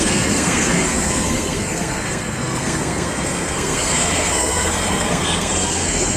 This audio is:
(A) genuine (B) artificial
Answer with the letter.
B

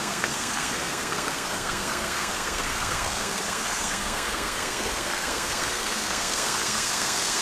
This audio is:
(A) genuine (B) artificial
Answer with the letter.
B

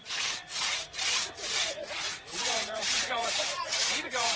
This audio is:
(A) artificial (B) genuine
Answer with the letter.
A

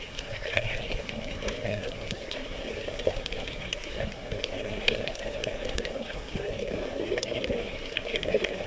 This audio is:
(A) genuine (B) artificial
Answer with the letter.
B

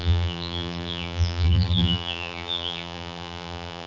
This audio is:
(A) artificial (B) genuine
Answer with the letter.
A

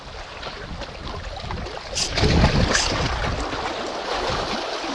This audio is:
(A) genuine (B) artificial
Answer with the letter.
A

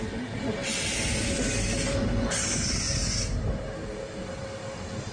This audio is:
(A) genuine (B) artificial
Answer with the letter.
A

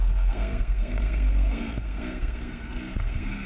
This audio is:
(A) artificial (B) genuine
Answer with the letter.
A